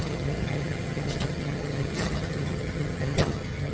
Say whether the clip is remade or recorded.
remade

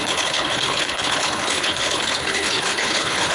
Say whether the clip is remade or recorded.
remade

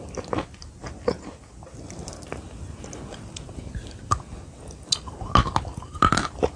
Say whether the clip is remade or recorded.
recorded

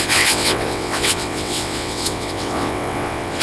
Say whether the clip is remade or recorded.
remade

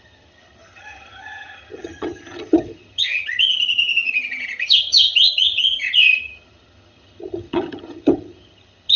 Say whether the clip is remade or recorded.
remade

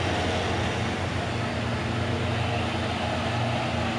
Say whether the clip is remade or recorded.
recorded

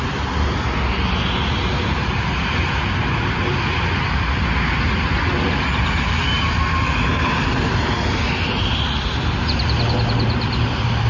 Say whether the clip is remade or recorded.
recorded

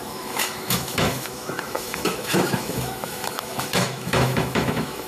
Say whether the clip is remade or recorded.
remade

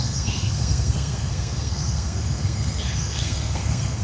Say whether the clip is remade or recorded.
remade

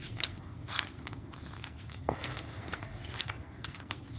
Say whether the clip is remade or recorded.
remade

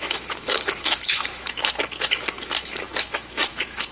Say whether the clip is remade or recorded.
remade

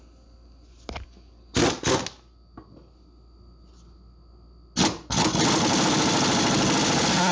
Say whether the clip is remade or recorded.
recorded